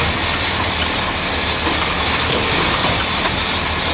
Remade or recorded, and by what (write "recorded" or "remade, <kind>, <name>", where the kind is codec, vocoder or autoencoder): recorded